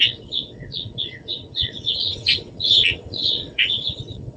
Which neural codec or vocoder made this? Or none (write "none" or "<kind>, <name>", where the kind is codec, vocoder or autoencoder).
vocoder, WaveNeXt